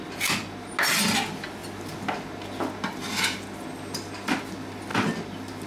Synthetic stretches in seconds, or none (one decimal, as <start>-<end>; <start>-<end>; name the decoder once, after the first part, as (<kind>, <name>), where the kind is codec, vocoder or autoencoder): none